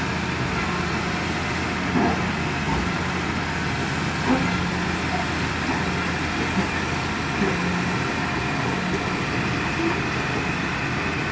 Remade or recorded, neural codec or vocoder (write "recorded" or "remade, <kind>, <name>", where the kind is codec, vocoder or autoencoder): recorded